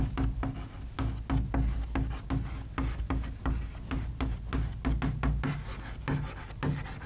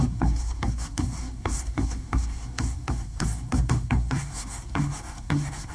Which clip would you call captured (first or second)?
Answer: first